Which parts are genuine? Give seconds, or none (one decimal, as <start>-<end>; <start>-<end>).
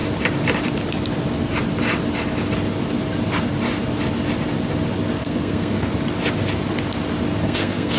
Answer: 0.0-5.2; 5.9-7.4